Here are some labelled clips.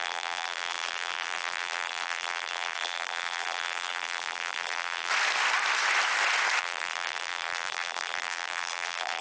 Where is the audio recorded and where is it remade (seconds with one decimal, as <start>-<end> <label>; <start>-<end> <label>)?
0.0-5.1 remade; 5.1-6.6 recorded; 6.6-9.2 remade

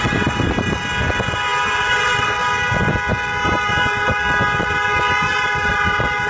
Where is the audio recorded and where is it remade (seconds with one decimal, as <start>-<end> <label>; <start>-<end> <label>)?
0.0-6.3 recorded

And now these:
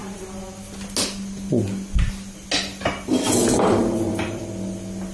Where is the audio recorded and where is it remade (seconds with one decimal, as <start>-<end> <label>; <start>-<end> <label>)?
0.0-3.8 recorded; 3.8-4.4 remade; 4.4-5.1 recorded

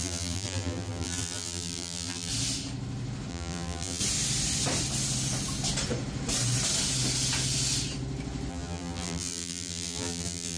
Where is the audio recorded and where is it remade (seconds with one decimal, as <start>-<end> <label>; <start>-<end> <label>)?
0.0-2.3 remade; 2.3-3.3 recorded; 3.3-4.0 remade; 4.0-8.5 recorded; 8.5-10.6 remade

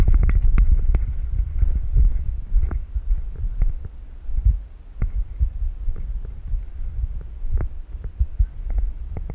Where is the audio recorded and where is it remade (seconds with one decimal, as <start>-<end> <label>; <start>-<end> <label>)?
0.0-9.3 recorded